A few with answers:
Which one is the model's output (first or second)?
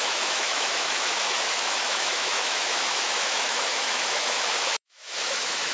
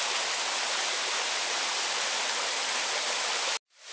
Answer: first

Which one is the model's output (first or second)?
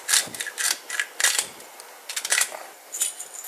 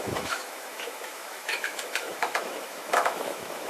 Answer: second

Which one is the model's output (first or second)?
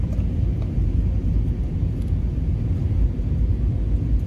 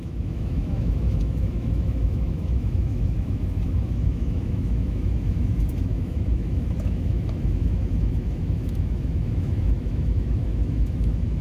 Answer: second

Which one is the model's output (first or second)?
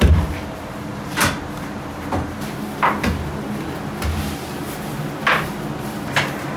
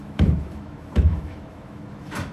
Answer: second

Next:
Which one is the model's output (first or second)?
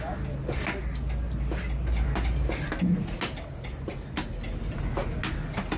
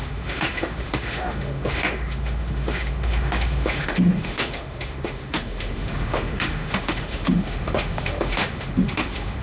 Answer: second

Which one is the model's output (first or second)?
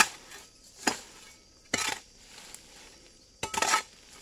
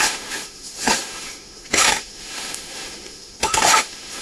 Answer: second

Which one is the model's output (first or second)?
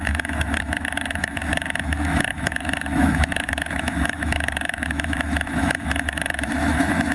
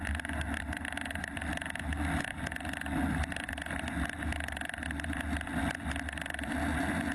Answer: first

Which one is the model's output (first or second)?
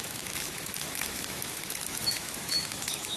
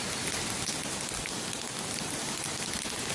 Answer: first